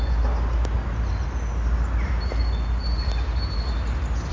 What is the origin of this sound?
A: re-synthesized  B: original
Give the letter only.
B